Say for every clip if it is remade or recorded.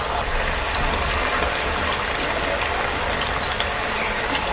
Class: remade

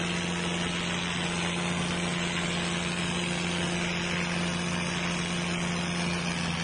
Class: recorded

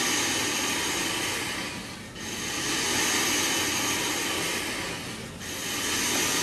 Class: recorded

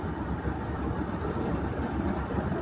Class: remade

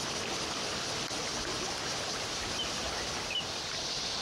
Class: recorded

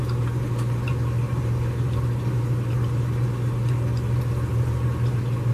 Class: recorded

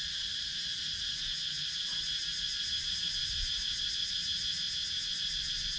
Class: recorded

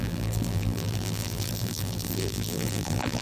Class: remade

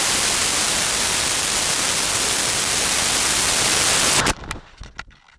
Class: recorded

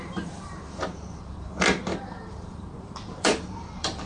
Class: remade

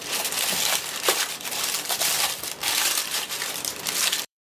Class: remade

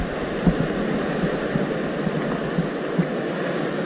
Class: recorded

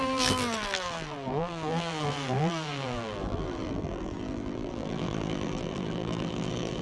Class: remade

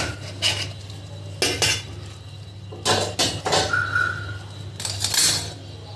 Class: recorded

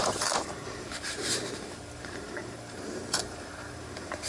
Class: remade